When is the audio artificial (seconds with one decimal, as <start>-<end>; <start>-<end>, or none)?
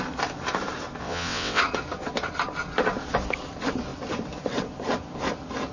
1.0-1.6